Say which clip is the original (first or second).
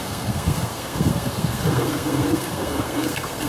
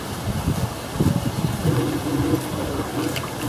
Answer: second